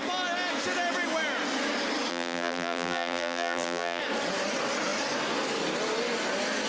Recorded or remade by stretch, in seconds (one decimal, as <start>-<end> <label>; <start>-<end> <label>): 0.0-2.1 recorded; 2.1-4.0 remade; 4.0-6.7 recorded